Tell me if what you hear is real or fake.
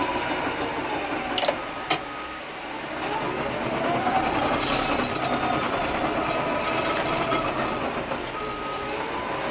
real